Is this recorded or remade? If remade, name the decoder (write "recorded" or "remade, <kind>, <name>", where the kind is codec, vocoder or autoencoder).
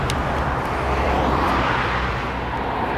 remade, vocoder, BigVGAN v2